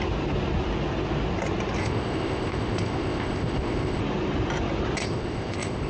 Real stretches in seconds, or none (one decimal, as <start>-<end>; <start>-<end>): 0.0-1.8; 4.0-5.0

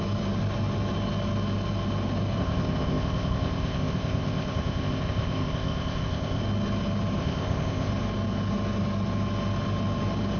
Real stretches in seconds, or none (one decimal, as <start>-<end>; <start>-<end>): 0.0-2.4; 6.4-7.2; 7.9-10.4

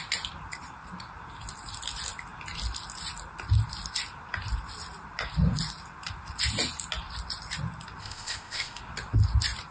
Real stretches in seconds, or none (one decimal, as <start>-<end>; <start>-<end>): 0.0-8.0; 8.8-9.7

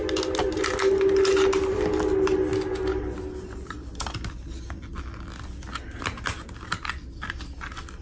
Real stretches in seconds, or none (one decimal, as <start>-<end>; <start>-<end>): 0.0-8.0